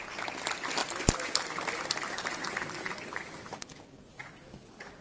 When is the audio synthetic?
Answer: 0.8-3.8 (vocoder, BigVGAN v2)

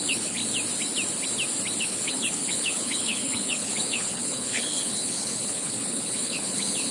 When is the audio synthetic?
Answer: 0.0-0.4 (codec, HILCodec); 1.8-6.9

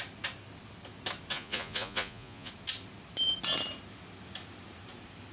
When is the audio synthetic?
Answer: 1.3-2.5 (vocoder, Vocos)

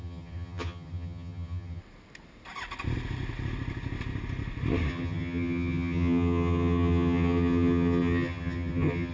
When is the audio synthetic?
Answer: 0.0-1.8 (vocoder, HiFi-GAN); 4.9-9.1

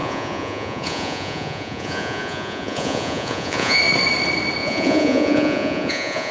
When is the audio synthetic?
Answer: 0.0-3.8 (vocoder, Vocos); 4.6-6.3

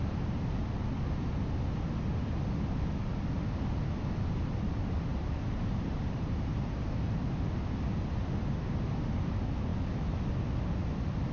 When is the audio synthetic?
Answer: 5.1-7.3 (vocoder, BigVGAN v2)